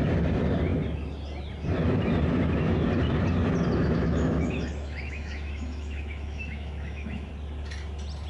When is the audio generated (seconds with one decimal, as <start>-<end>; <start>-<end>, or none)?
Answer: 3.8-7.3